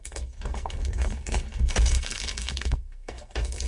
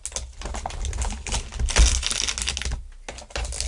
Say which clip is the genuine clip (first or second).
second